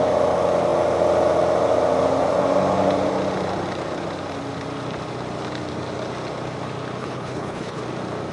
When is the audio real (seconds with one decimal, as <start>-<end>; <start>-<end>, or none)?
0.0-7.0; 7.8-8.3

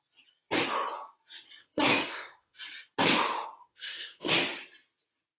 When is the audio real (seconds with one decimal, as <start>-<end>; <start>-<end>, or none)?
0.0-1.6; 2.6-3.6; 4.3-5.4

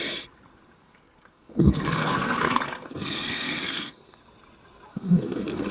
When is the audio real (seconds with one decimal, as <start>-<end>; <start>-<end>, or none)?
0.0-0.8; 4.2-4.9

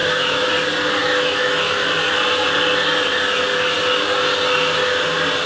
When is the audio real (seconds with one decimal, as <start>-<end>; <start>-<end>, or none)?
0.5-1.0; 1.9-5.5

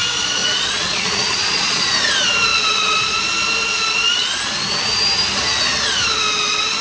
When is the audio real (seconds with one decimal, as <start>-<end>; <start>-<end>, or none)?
0.0-0.4; 1.9-2.5; 3.2-6.8

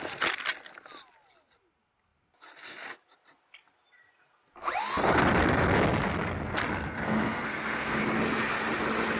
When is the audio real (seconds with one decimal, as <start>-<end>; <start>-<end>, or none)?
0.0-6.7; 8.0-9.2

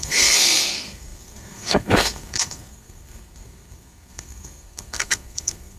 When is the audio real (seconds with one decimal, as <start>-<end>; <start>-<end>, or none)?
none

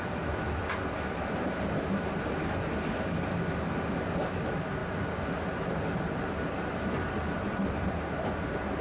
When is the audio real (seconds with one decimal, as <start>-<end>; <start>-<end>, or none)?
0.0-8.8